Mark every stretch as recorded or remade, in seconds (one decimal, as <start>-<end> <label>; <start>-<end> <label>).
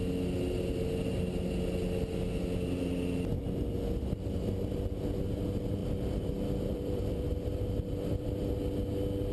0.0-5.8 recorded; 5.8-8.5 remade; 8.5-9.3 recorded